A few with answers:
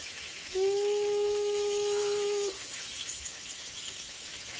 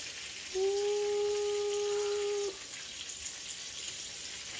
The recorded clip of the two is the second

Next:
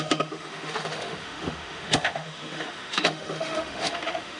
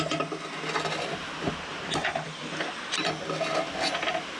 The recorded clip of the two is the second